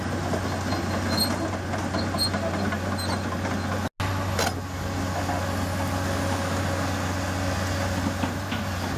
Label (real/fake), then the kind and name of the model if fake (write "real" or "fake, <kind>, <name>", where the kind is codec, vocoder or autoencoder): real